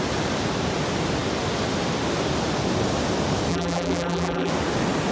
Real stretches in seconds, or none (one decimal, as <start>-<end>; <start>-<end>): 0.0-3.5; 4.5-5.1